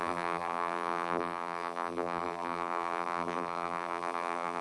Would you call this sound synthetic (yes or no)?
yes